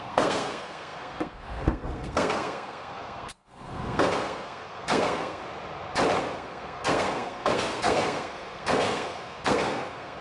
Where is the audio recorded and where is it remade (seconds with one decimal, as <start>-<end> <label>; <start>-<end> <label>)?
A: 0.0-5.4 remade; 5.4-6.2 recorded; 6.2-10.2 remade

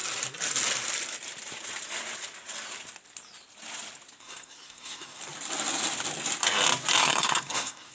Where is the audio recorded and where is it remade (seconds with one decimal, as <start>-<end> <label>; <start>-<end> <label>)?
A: 0.0-4.2 recorded; 4.2-5.2 remade; 5.2-7.0 recorded; 7.0-7.9 remade

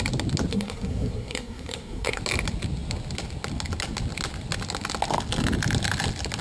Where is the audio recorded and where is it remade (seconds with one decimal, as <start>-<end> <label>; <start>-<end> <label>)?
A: 0.0-0.5 recorded; 0.5-2.2 remade; 2.2-6.4 recorded

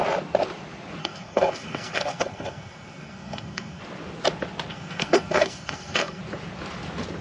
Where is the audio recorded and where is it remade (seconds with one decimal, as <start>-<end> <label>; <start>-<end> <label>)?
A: 0.0-1.0 recorded; 1.0-3.8 remade; 3.8-4.7 recorded; 4.7-6.2 remade; 6.2-7.2 recorded

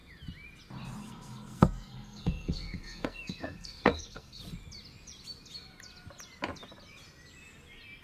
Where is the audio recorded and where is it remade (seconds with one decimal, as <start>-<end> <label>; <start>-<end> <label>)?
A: 0.0-1.0 recorded; 1.0-4.4 remade; 4.4-8.0 recorded

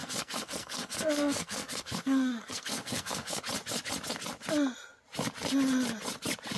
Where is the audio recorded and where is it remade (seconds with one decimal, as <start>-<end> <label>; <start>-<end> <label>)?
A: 0.0-3.4 remade; 3.4-6.6 recorded

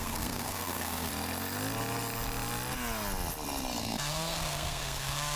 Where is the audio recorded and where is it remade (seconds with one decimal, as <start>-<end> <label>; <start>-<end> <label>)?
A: 0.0-1.1 remade; 1.1-3.8 recorded; 3.8-5.4 remade